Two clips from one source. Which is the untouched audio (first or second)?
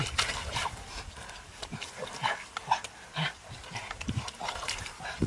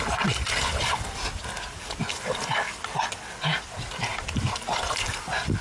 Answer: second